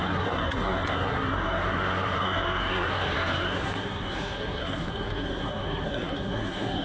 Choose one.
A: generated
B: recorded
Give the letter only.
A